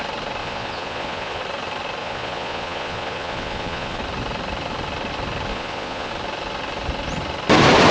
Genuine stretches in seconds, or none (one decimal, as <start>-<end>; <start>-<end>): 0.0-0.4; 1.4-2.0; 4.0-5.5; 6.1-7.9